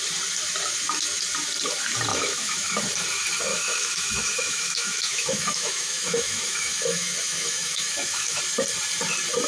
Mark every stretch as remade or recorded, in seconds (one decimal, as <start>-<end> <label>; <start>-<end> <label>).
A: 0.0-2.1 recorded; 2.1-2.8 remade; 2.8-3.5 recorded; 3.5-8.4 remade; 8.4-9.5 recorded